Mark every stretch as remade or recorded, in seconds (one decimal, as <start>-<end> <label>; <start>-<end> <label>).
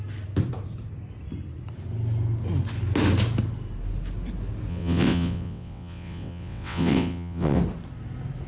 0.0-4.7 recorded; 4.7-7.6 remade; 7.6-8.5 recorded